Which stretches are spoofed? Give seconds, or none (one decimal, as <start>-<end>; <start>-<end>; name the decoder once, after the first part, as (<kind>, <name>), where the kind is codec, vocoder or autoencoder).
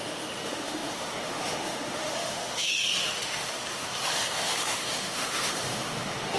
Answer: 0.0-6.4 (autoencoder, DAC-VAE)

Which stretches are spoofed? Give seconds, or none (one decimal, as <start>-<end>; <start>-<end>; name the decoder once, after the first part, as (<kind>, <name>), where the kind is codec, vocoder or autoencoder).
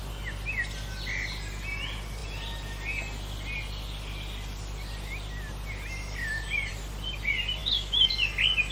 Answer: 7.6-8.1 (autoencoder, DAC-VAE)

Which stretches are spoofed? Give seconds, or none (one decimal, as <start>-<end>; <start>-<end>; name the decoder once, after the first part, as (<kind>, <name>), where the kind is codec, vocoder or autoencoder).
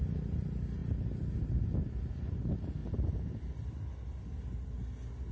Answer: none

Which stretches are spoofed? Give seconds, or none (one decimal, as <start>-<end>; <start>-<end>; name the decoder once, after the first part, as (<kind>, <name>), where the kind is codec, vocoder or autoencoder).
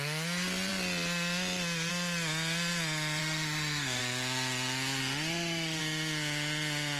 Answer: 3.2-4.0 (autoencoder, DAC-VAE); 5.0-5.8